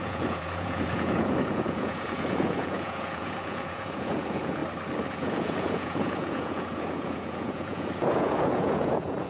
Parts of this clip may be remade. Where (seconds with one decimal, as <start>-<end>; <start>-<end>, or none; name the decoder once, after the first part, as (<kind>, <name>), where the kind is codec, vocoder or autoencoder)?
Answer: 0.0-4.6 (vocoder, Vocos); 5.1-9.3